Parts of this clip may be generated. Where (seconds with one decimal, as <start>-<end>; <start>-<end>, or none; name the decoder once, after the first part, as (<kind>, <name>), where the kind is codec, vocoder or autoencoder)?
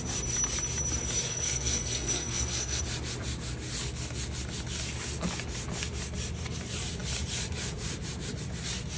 1.3-2.8 (codec, SNAC)